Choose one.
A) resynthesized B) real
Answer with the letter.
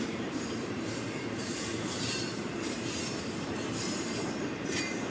A